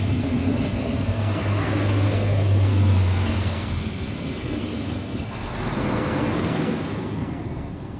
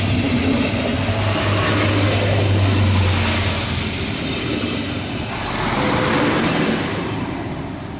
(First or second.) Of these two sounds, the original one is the second